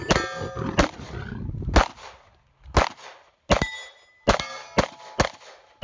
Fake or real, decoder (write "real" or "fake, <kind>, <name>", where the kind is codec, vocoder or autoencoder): real